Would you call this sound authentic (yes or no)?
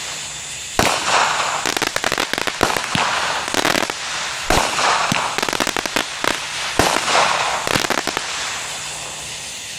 yes